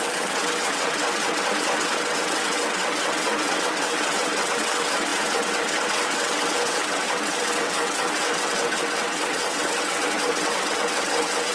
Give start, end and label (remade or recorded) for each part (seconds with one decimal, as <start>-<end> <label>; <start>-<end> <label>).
0.0-11.5 remade